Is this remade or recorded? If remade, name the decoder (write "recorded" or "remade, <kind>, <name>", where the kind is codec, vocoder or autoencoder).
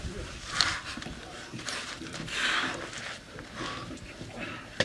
recorded